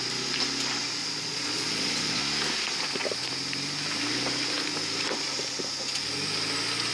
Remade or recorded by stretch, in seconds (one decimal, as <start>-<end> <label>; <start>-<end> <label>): 0.0-1.0 recorded; 1.0-2.2 remade; 2.2-6.9 recorded